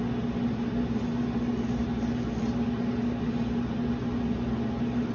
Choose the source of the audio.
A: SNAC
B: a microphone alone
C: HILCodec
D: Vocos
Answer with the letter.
B